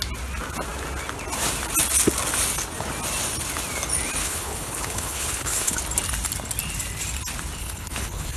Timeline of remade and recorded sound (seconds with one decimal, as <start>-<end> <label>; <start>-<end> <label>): 0.0-4.2 recorded; 4.2-5.8 remade; 5.8-7.6 recorded; 7.6-8.4 remade